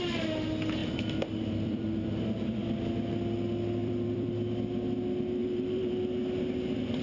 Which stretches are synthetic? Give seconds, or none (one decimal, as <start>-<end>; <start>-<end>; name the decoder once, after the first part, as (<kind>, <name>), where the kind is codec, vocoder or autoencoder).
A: 0.8-2.9 (vocoder, BigVGAN v2); 3.8-4.3; 5.4-5.9